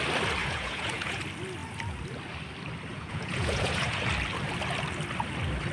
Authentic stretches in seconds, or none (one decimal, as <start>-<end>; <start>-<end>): 0.0-0.4; 1.2-2.9; 4.1-5.7